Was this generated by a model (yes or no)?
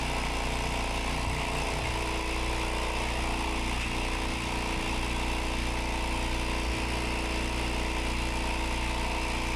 no